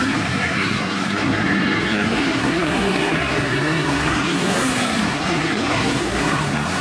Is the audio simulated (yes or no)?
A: yes